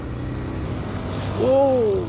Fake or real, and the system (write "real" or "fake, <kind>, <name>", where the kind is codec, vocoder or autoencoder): real